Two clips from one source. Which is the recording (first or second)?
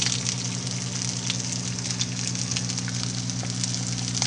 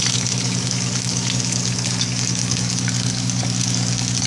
first